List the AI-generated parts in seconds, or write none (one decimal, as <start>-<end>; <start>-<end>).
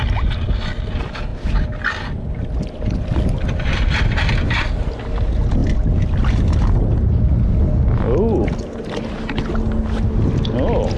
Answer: none